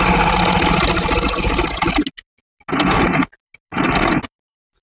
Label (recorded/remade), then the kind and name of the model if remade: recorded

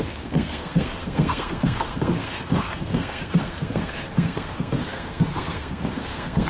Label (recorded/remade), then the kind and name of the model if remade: remade, codec, SNAC